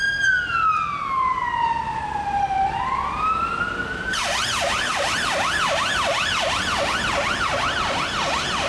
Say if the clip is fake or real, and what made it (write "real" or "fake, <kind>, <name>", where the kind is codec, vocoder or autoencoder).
real